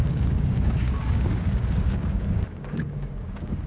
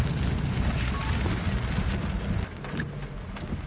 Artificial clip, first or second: first